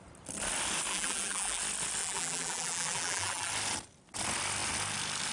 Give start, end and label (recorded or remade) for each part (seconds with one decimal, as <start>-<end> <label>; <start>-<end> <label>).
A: 0.0-0.9 recorded; 0.9-1.6 remade; 1.6-2.0 recorded; 2.0-3.5 remade; 3.5-5.3 recorded